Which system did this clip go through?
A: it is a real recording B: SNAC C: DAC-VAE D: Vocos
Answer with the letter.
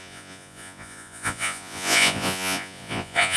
D